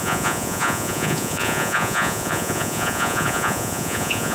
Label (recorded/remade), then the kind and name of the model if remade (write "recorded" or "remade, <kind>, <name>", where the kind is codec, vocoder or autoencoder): remade, vocoder, Vocos